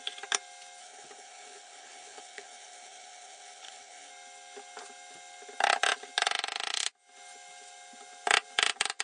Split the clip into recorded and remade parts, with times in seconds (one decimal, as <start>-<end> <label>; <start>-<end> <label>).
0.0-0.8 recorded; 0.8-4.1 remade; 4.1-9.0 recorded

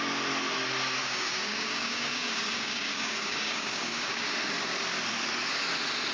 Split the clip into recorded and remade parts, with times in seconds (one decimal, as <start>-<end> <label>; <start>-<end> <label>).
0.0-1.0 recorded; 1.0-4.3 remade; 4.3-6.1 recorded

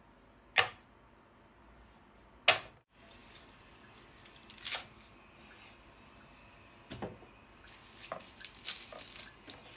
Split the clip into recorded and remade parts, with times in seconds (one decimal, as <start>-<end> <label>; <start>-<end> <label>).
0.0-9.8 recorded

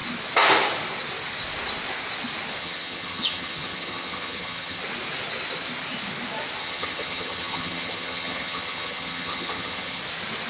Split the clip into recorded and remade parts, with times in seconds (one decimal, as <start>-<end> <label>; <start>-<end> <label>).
0.0-2.6 recorded; 2.6-4.8 remade; 4.8-6.6 recorded; 6.6-10.0 remade; 10.0-10.5 recorded